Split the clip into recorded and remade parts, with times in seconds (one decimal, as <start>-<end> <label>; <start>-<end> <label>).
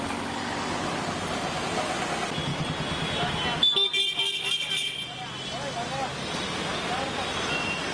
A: 0.0-7.9 recorded